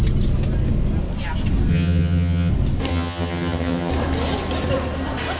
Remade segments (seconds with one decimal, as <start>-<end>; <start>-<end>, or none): 1.7-2.5; 2.9-3.9